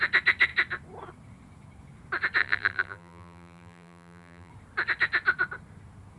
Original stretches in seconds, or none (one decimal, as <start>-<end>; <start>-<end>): 0.0-2.4; 4.5-6.2